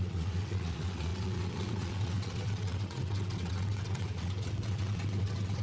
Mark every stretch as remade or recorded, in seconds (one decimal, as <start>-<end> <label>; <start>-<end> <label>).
0.0-5.6 remade